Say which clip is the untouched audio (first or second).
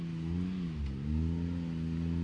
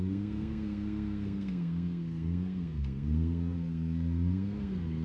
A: first